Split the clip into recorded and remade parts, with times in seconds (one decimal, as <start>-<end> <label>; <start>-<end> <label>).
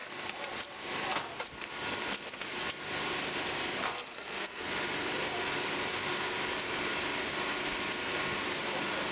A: 0.0-3.8 recorded; 3.8-4.6 remade; 4.6-9.1 recorded